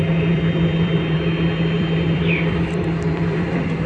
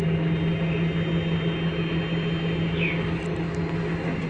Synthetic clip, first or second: first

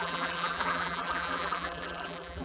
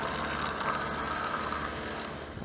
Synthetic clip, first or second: first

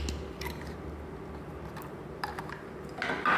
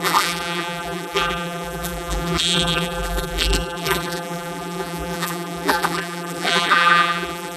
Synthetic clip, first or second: second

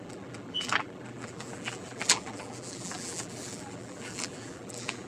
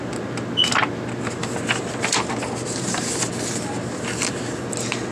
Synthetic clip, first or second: first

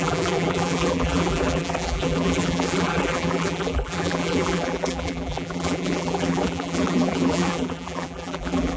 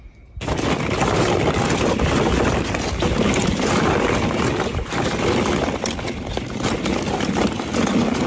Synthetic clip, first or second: first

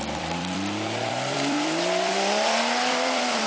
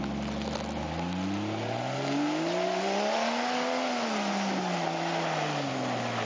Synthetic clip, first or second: first